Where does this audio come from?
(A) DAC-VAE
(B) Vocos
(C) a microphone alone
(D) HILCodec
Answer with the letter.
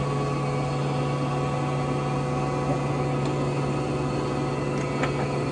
C